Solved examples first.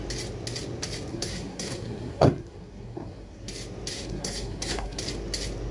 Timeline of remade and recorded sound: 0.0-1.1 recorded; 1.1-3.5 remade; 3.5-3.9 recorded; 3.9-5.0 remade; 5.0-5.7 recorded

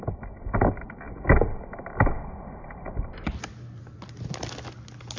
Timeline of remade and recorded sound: 0.0-1.3 recorded; 1.3-4.4 remade; 4.4-5.2 recorded